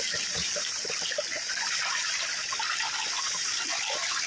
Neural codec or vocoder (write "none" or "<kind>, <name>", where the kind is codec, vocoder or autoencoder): none